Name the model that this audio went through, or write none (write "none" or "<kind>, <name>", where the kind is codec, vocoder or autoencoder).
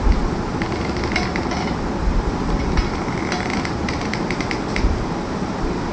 none